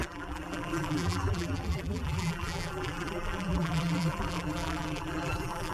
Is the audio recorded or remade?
remade